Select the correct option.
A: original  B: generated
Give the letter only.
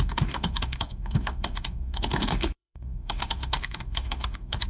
B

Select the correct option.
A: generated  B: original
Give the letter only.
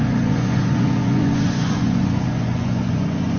A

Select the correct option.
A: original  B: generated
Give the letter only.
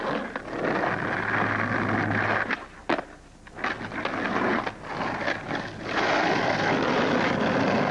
A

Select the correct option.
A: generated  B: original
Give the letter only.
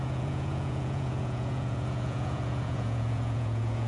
A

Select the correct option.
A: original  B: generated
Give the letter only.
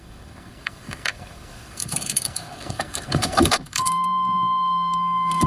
B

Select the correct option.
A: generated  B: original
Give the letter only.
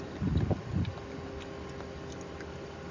B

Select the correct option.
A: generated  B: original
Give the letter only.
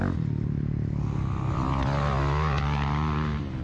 B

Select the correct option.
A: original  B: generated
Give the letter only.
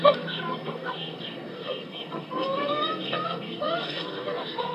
B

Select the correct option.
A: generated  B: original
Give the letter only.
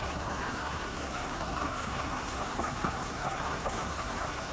A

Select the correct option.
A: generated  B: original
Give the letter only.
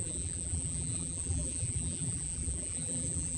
A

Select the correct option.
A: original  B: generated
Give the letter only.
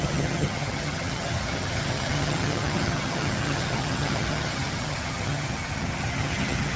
B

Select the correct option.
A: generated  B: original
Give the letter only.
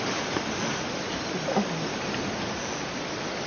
B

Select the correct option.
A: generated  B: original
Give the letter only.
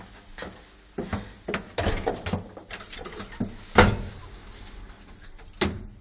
B